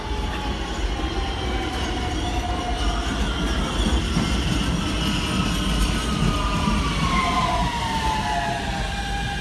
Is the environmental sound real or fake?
real